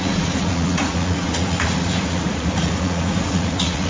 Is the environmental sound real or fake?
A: fake